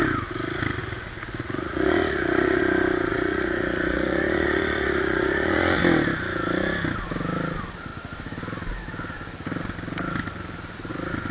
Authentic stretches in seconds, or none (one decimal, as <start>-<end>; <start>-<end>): 0.0-0.8; 2.6-3.1; 5.8-11.3